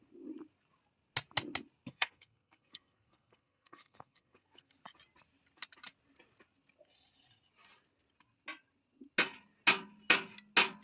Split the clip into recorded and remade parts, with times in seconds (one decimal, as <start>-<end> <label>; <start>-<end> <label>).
0.0-1.9 recorded; 1.9-4.7 remade; 4.7-10.8 recorded